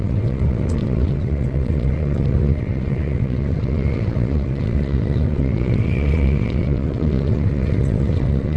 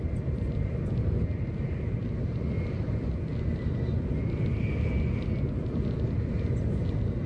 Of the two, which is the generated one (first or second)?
first